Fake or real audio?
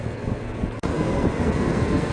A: fake